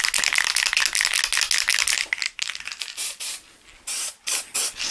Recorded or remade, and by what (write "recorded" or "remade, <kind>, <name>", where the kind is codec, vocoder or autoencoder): recorded